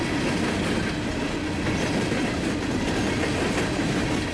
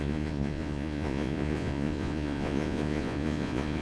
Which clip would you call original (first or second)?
first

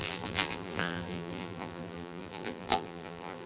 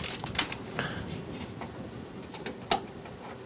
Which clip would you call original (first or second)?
second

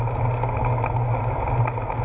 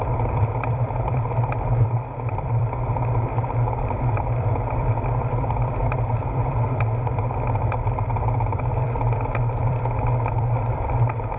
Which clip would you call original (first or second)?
first